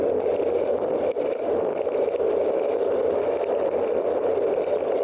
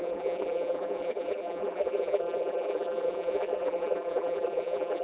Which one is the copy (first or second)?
second